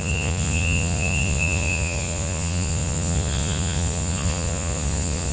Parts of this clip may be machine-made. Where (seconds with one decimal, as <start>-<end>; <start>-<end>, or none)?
0.0-5.3